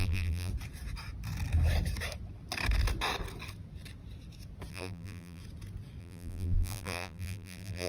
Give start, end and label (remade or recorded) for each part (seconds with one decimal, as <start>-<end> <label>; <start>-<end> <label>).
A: 0.0-0.5 remade; 0.5-4.7 recorded; 4.7-5.4 remade; 5.4-6.0 recorded; 6.0-7.9 remade